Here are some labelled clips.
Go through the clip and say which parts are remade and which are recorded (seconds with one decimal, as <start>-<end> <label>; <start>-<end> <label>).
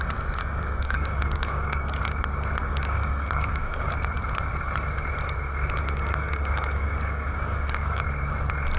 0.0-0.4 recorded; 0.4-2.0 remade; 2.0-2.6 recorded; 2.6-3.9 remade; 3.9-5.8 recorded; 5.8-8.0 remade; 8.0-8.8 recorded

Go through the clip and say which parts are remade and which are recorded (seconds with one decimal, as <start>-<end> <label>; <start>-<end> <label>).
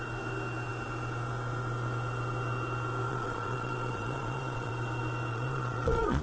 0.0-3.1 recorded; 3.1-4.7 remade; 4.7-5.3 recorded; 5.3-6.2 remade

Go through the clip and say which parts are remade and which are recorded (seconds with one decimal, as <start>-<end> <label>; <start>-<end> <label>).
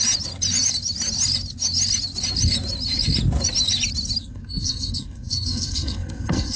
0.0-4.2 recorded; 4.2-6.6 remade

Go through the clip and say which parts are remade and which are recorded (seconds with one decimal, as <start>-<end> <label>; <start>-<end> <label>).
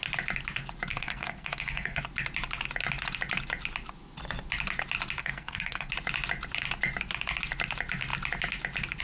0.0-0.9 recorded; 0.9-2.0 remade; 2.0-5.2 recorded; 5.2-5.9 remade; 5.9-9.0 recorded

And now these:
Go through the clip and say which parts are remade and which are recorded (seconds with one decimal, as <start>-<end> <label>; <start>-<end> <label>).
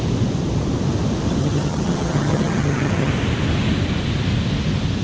0.0-1.4 recorded; 1.4-3.1 remade; 3.1-5.0 recorded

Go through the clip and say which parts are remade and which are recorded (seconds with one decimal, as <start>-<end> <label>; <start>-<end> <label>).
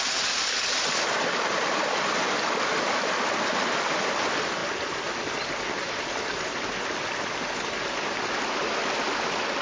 0.0-9.6 recorded